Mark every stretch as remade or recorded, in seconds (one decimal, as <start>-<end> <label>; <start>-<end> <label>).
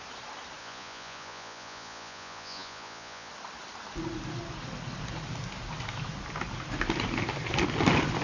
0.0-0.6 recorded; 0.6-3.3 remade; 3.3-8.2 recorded